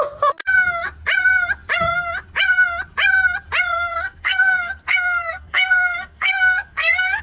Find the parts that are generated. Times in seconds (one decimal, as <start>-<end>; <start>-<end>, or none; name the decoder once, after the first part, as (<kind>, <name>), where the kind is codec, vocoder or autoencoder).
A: 3.9-7.2 (codec, SNAC)